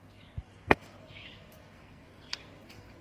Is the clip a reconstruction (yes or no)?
yes